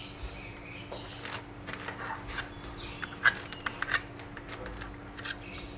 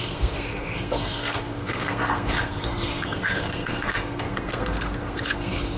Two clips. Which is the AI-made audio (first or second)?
second